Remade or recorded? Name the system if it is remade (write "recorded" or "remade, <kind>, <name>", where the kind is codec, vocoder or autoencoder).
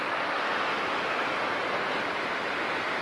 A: recorded